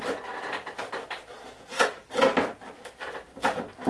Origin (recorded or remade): recorded